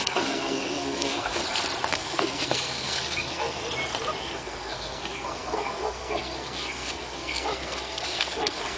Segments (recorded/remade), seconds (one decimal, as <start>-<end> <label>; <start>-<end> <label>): 0.0-1.4 remade; 1.4-1.9 recorded; 1.9-3.6 remade; 3.6-4.2 recorded; 4.2-8.8 remade